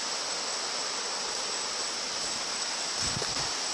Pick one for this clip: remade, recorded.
recorded